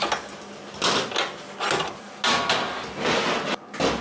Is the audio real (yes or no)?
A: yes